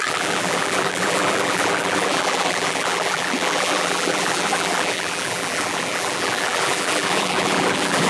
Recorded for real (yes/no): no